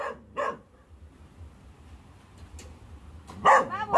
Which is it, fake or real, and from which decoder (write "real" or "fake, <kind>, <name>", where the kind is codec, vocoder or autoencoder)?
real